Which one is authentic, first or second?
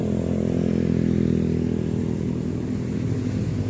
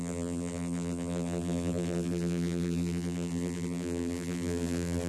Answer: first